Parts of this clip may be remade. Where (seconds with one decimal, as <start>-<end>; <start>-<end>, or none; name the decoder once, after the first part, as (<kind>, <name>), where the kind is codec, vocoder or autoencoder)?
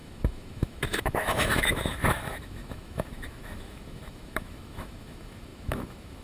0.0-6.2 (autoencoder, DAC-VAE)